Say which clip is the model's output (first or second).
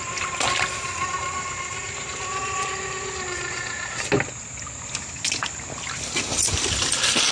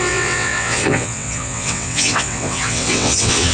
second